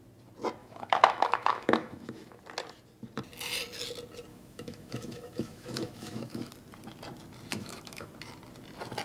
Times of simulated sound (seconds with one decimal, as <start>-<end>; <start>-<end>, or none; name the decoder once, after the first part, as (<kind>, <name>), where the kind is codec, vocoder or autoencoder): 0.6-2.4 (autoencoder, DAC-VAE); 4.3-6.5; 7.5-8.1